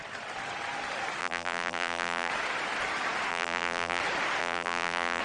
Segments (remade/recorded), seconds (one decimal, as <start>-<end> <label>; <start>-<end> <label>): 0.0-1.2 recorded; 1.2-2.3 remade; 2.3-3.3 recorded; 3.3-4.0 remade; 4.0-4.4 recorded; 4.4-5.2 remade